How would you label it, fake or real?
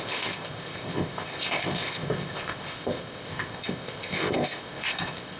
fake